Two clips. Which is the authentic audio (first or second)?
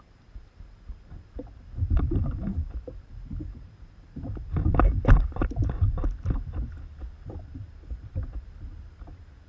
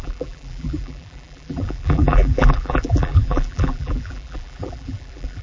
first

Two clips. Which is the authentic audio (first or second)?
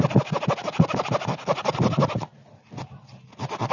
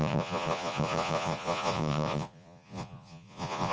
first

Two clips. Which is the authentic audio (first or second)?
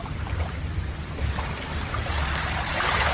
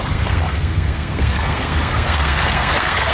first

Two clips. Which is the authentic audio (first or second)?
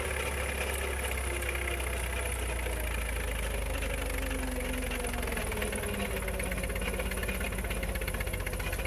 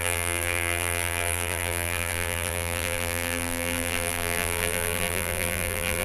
first